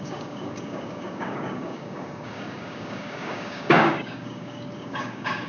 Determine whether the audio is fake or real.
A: fake